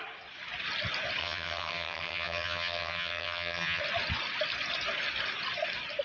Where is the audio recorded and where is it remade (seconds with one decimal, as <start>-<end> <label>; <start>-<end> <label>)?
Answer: 0.0-1.2 recorded; 1.2-3.8 remade; 3.8-6.0 recorded